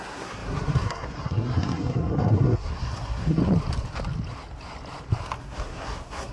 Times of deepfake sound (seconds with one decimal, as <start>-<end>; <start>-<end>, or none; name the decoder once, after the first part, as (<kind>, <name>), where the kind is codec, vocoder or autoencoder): 0.0-3.4 (codec, SNAC); 5.4-6.3

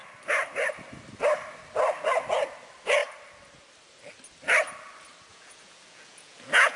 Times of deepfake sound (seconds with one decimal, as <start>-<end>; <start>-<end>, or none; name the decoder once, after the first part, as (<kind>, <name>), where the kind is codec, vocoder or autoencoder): 5.3-6.8 (vocoder, Vocos)

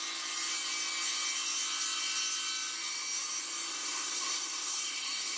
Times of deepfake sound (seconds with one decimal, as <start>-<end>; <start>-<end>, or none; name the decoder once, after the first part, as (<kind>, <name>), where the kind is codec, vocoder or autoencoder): 3.7-5.4 (codec, SNAC)

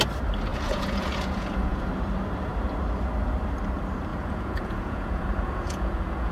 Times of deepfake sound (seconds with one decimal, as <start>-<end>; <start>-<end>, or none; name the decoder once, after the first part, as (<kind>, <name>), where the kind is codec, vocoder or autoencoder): 0.5-1.9 (vocoder, Vocos); 4.1-6.3